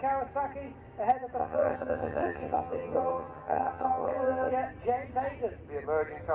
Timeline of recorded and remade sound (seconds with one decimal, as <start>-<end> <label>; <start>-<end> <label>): 0.0-1.4 recorded; 1.4-4.5 remade; 4.5-6.3 recorded